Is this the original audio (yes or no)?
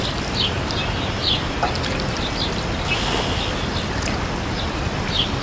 yes